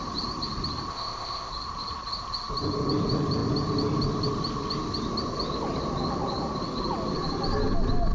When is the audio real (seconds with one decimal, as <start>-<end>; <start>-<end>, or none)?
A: 0.0-0.9; 1.5-8.1